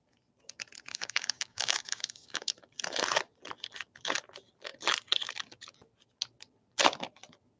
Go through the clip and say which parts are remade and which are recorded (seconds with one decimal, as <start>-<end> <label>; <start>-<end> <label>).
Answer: 0.0-0.9 recorded; 0.9-2.5 remade; 2.5-7.6 recorded